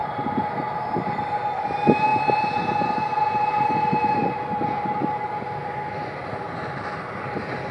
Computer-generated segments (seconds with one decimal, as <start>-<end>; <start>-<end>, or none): none